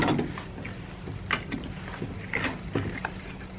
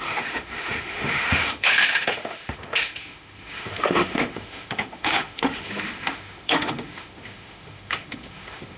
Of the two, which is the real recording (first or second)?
first